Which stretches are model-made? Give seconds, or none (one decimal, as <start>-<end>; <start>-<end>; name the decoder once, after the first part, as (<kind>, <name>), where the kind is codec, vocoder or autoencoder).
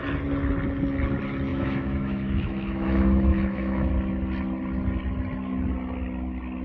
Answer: 1.5-3.9 (autoencoder, DAC-VAE)